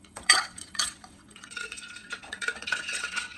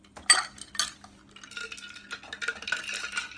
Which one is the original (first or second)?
second